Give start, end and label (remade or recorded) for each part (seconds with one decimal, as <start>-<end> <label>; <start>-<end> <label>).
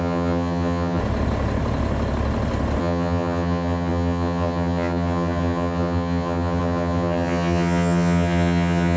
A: 0.0-1.0 remade; 1.0-2.8 recorded; 2.8-9.0 remade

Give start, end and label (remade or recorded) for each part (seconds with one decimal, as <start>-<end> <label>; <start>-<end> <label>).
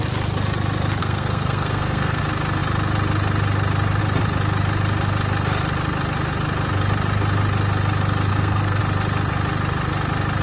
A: 0.0-1.0 recorded; 1.0-2.2 remade; 2.2-8.3 recorded; 8.3-8.8 remade; 8.8-10.4 recorded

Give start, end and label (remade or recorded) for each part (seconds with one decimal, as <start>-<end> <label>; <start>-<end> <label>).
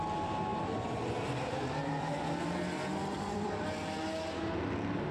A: 0.0-0.5 recorded; 0.5-3.6 remade; 3.6-5.1 recorded